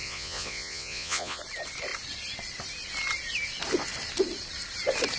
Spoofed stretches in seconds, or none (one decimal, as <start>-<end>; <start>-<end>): 0.0-1.4